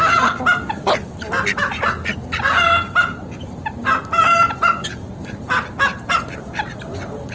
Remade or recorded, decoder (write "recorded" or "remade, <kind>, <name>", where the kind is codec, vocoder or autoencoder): recorded